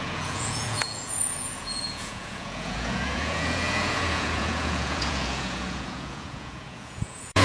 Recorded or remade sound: remade